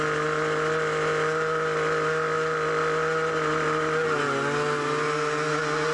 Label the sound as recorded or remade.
recorded